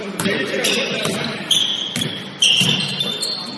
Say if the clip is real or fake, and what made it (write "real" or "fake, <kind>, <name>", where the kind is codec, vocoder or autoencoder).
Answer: real